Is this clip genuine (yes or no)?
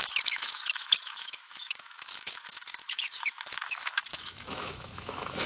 no